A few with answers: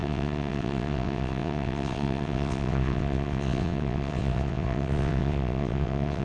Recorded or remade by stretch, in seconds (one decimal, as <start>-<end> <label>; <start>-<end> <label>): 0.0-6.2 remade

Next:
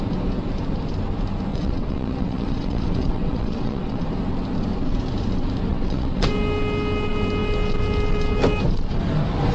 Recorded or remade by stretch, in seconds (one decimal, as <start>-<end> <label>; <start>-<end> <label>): 0.0-1.5 recorded; 1.5-4.0 remade; 4.0-5.7 recorded; 5.7-6.3 remade; 6.3-9.5 recorded

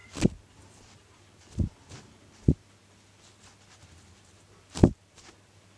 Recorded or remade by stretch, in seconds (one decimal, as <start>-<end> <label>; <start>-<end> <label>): 0.0-5.8 recorded

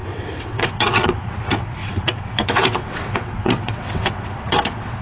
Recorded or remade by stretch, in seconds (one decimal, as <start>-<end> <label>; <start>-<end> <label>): 0.0-1.3 remade; 1.3-1.8 recorded; 1.8-5.0 remade

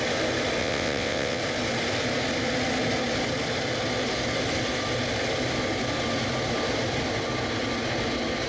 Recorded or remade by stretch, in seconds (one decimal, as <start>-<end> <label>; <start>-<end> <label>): 0.0-0.6 recorded; 0.6-1.4 remade; 1.4-8.5 recorded

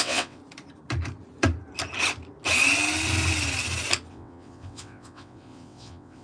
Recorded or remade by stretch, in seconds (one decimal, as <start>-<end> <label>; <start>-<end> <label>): 0.0-0.4 remade; 0.4-4.1 recorded; 4.1-6.2 remade

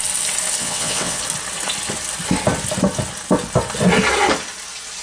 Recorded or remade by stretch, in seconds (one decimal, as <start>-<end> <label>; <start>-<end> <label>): 0.0-0.6 recorded; 0.6-1.2 remade; 1.2-5.0 recorded